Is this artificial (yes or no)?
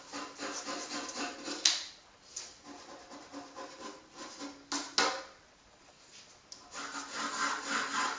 no